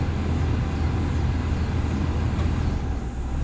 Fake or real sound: real